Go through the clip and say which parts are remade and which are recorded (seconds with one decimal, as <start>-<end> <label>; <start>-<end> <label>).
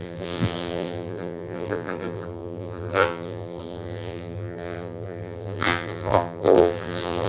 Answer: 0.0-7.3 remade